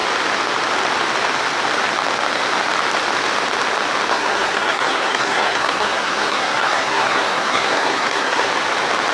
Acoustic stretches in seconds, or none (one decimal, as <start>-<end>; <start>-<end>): 0.0-4.1; 8.5-9.1